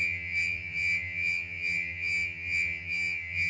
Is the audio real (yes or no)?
no